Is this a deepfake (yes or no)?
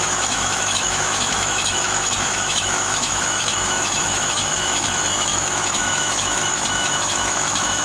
yes